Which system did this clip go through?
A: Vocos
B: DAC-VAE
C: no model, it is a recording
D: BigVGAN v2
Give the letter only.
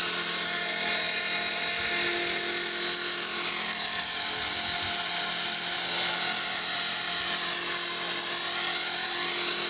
C